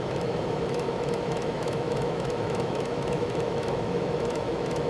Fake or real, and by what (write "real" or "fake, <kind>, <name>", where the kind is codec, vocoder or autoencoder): fake, autoencoder, DAC-VAE